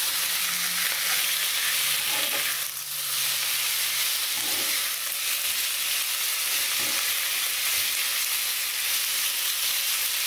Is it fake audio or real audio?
real